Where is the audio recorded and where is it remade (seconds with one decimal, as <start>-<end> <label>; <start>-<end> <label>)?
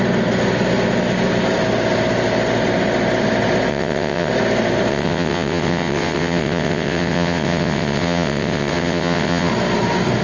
0.0-3.7 recorded; 3.7-4.3 remade; 4.3-4.9 recorded; 4.9-9.5 remade; 9.5-10.2 recorded